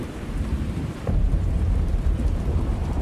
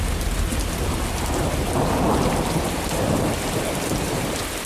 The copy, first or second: first